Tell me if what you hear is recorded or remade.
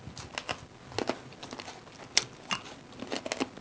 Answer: recorded